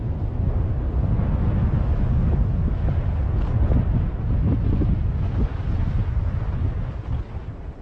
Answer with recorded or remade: recorded